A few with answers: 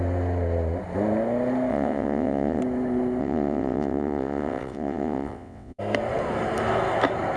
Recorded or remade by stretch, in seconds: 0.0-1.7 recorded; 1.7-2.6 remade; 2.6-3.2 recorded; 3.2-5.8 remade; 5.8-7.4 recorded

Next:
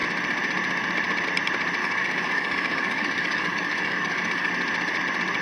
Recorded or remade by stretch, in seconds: 0.0-1.8 recorded; 1.8-4.5 remade; 4.5-5.4 recorded

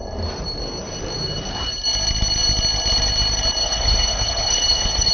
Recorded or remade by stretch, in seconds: 0.0-3.6 recorded; 3.6-5.1 remade